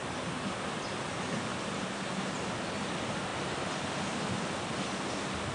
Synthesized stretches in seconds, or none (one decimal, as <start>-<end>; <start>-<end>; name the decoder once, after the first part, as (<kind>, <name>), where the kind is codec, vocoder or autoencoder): 1.5-2.6 (vocoder, BigVGAN v2)